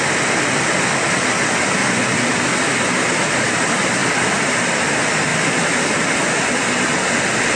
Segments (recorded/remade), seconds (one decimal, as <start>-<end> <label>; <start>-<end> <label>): 0.0-1.8 recorded; 1.8-3.6 remade; 3.6-4.0 recorded; 4.0-4.6 remade; 4.6-7.6 recorded